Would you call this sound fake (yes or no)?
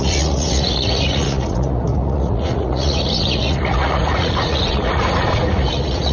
yes